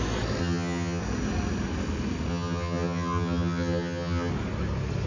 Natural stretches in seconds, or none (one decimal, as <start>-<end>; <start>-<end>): 0.0-0.4; 1.0-2.3; 4.3-5.1

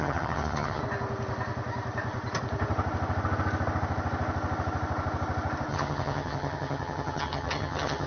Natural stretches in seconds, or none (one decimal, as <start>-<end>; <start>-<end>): 0.8-5.7

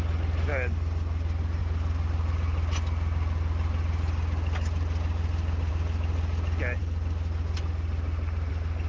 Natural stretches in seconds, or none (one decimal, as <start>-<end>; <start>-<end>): 0.0-8.9

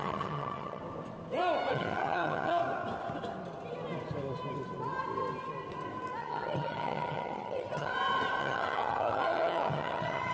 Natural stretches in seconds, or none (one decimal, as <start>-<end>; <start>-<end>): 0.8-1.7; 2.6-6.2; 7.9-8.4

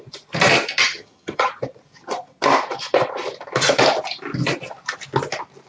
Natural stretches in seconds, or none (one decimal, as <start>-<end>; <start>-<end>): 0.0-0.8; 1.5-5.7

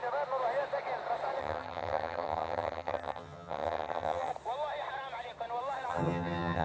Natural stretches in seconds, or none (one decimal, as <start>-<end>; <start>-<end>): 0.0-1.4; 4.3-5.9

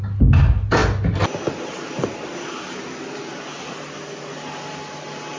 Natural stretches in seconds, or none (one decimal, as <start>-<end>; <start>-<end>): 0.0-5.4

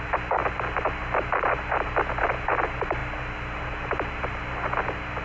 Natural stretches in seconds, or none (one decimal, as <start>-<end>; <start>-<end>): 0.0-5.2